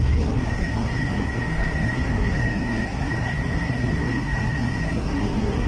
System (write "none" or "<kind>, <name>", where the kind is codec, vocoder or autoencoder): codec, SNAC